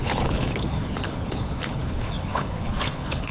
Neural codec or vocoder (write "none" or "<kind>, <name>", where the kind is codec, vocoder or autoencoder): codec, HILCodec